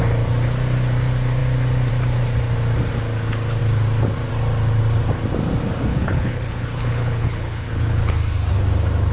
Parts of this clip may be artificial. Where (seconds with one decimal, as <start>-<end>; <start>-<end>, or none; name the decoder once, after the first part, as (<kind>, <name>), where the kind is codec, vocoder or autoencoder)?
5.9-8.1 (codec, HILCodec)